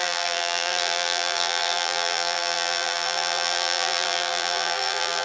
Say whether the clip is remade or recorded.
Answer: remade